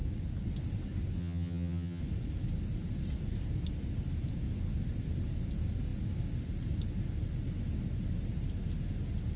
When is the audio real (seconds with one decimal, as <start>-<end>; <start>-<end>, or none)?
0.0-1.2; 2.0-9.4